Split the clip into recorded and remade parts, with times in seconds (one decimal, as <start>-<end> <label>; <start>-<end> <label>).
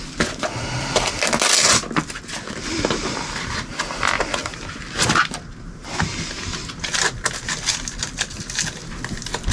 0.0-4.4 recorded; 4.4-4.9 remade; 4.9-9.5 recorded